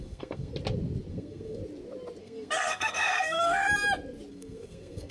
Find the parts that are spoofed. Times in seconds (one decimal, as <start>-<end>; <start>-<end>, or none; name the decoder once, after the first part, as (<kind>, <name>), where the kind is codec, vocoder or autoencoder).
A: 0.0-0.5 (codec, SNAC); 1.1-1.6; 2.2-3.6; 4.3-5.1